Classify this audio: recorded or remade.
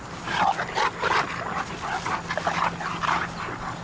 recorded